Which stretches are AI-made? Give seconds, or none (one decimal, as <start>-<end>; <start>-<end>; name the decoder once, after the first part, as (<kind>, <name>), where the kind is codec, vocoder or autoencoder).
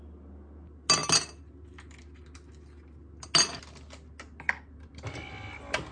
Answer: none